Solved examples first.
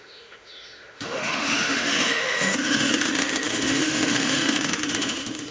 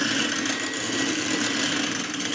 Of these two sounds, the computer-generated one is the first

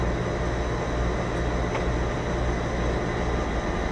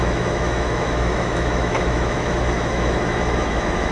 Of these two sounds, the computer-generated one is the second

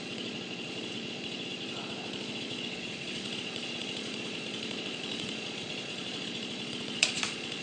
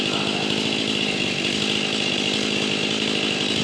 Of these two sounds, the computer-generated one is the first